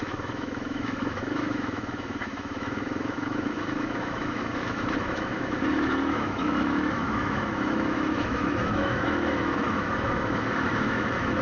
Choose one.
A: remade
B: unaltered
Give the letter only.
A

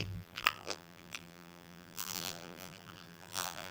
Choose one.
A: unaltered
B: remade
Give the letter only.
B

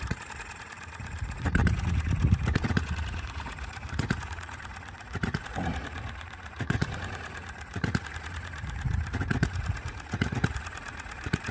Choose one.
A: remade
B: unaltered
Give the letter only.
A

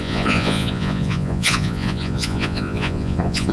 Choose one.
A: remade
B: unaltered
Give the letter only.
A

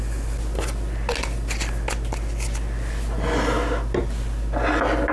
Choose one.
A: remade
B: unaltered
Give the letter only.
B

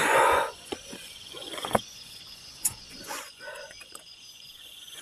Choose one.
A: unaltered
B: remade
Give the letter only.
B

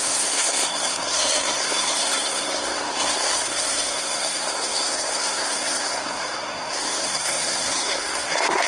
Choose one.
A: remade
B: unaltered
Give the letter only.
A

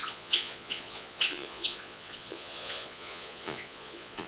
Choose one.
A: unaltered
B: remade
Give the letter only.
B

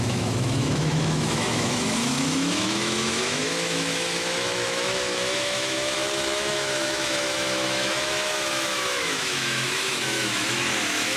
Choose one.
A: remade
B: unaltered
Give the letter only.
A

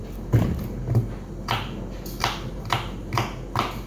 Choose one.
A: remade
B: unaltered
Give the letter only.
B